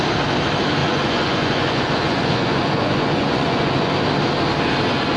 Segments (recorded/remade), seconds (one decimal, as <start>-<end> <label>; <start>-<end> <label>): 0.0-0.8 recorded; 0.8-3.9 remade; 3.9-5.2 recorded